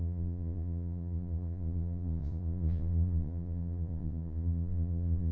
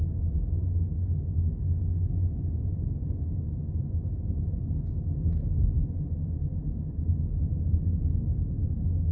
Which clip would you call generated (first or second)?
first